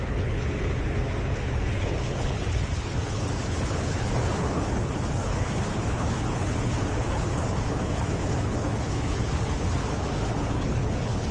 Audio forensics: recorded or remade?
remade